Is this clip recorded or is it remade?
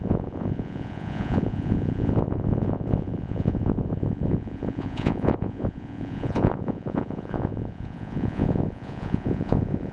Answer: remade